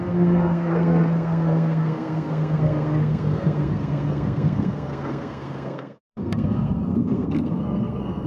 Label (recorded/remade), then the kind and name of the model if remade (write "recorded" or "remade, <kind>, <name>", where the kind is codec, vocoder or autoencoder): remade, codec, SNAC